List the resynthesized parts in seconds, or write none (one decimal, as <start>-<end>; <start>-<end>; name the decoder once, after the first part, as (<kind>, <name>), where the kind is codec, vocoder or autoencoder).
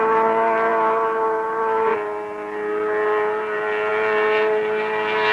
none